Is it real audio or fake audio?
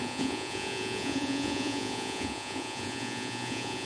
fake